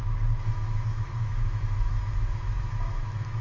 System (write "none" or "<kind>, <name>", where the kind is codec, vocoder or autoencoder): autoencoder, DAC-VAE